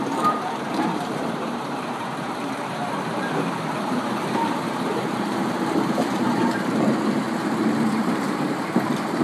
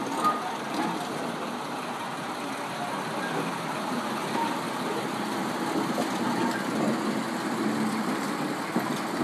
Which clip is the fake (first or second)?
first